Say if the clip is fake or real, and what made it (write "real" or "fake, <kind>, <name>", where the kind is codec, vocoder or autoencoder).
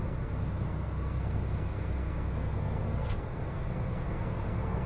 fake, codec, SNAC